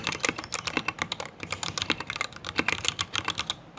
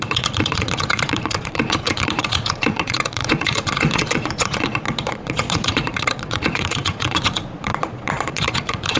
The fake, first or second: second